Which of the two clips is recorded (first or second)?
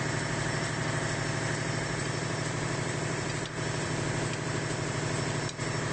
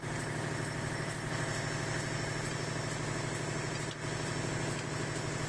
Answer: second